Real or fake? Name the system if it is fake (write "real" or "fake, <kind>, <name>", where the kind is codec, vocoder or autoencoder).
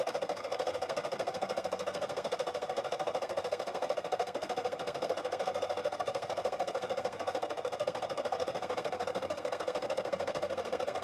fake, codec, SNAC